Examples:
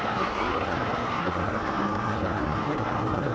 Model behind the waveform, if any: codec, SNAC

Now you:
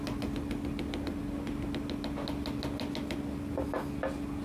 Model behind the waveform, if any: none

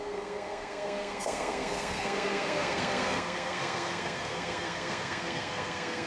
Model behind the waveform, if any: codec, SNAC